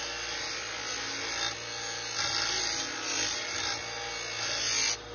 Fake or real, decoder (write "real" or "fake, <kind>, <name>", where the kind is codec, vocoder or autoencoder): real